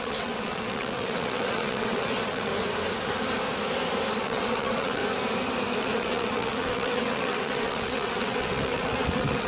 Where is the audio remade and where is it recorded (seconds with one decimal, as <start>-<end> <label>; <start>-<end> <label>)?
0.0-2.5 remade; 2.5-4.1 recorded; 4.1-5.0 remade; 5.0-5.8 recorded; 5.8-9.5 remade